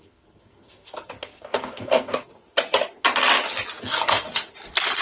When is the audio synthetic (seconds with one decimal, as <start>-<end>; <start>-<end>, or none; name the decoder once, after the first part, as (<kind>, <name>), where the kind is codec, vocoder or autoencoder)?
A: 0.0-2.3 (codec, SNAC); 3.8-4.3